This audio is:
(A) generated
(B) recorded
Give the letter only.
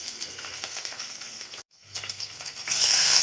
A